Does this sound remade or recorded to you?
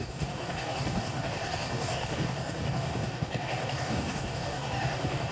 remade